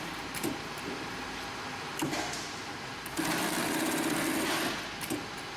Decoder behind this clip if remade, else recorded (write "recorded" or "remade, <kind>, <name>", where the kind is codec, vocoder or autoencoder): recorded